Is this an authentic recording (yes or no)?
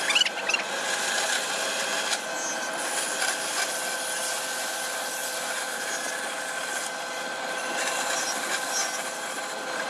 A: yes